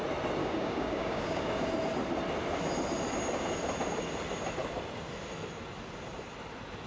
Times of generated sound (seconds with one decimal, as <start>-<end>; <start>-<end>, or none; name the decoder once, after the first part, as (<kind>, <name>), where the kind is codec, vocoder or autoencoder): 0.4-1.7 (codec, DAC)